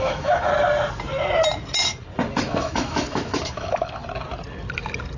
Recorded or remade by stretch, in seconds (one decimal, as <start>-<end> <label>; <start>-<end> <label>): 0.0-0.5 remade; 0.5-2.3 recorded; 2.3-4.0 remade; 4.0-5.2 recorded